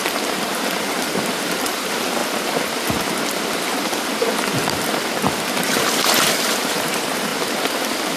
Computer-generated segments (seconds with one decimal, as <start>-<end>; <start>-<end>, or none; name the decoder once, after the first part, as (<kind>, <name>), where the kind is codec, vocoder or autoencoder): 0.0-2.2 (vocoder, BigVGAN v2); 6.3-7.3